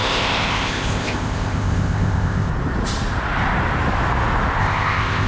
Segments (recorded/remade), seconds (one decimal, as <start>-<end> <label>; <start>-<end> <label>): 0.0-2.5 remade; 2.5-4.6 recorded; 4.6-5.3 remade